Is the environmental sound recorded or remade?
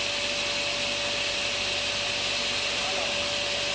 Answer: recorded